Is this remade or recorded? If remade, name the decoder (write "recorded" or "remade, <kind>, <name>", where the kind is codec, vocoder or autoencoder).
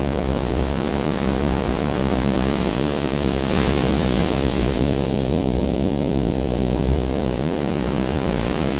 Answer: remade, vocoder, Vocos